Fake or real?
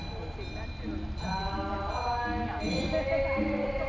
real